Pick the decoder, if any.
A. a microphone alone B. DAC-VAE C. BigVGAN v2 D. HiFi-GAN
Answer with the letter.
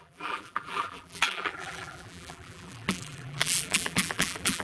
C